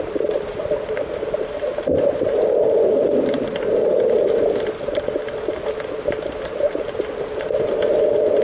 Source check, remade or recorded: recorded